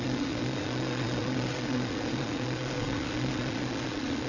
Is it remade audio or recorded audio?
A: remade